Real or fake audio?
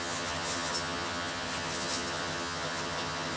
fake